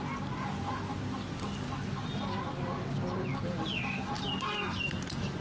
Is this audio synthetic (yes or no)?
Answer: no